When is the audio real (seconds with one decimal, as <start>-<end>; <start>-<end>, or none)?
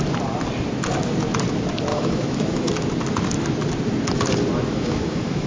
0.0-1.9; 2.7-4.7